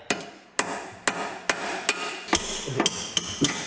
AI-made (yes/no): no